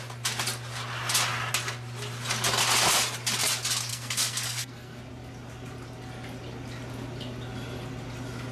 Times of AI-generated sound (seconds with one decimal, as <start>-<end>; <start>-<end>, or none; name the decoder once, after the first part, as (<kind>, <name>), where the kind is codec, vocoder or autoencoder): 3.9-5.0 (codec, SNAC)

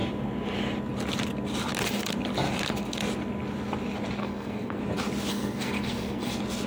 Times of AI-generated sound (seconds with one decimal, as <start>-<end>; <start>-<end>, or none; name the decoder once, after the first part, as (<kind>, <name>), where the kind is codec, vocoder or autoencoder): 4.2-4.8 (codec, SNAC); 5.3-6.3

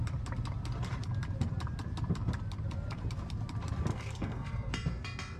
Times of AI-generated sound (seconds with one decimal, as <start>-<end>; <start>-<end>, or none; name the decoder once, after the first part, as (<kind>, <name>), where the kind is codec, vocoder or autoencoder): 3.9-4.7 (codec, SNAC)

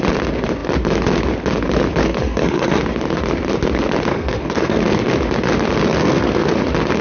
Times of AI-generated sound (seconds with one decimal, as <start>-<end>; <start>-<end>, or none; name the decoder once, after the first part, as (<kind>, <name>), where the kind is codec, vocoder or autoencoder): 2.0-2.8 (codec, SNAC); 4.1-4.8; 6.0-6.5

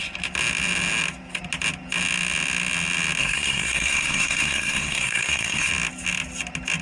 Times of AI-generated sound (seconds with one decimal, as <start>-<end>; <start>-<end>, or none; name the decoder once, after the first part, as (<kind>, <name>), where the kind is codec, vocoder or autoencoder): 3.2-5.7 (codec, SNAC)